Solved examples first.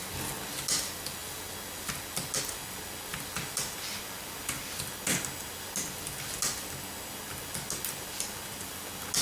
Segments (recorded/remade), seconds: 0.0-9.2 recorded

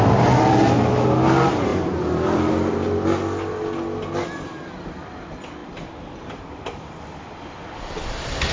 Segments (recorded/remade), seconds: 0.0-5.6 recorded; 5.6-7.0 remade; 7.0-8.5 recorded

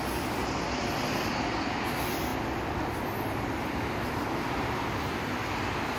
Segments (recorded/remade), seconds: 0.0-6.0 recorded